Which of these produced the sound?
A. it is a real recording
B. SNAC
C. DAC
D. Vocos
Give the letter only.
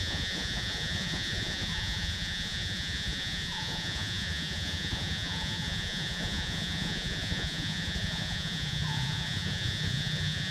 D